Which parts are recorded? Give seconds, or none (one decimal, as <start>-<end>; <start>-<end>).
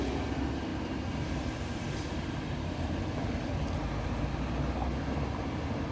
0.0-5.9